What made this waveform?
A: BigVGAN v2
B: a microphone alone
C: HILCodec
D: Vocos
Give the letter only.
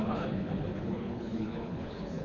C